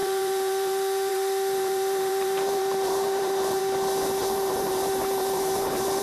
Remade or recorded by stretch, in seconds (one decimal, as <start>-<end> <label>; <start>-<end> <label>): 0.0-3.6 remade; 3.6-4.2 recorded; 4.2-6.0 remade